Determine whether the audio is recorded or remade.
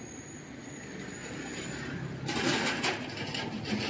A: recorded